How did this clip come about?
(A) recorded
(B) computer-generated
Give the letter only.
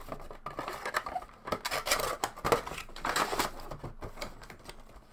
A